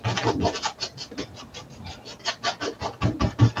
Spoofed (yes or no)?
no